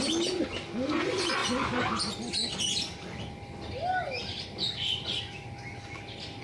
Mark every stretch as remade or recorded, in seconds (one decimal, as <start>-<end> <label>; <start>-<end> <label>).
0.0-6.4 recorded